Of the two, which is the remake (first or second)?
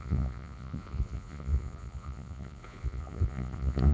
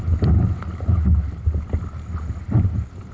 first